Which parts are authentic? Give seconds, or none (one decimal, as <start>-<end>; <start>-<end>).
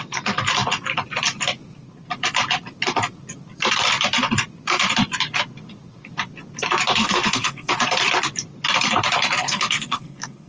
0.0-7.0; 7.7-9.4